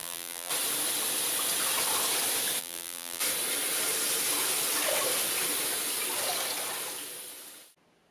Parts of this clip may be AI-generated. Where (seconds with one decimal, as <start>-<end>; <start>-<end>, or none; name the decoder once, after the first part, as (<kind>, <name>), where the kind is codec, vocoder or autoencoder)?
0.0-0.5 (vocoder, BigVGAN v2); 2.6-3.2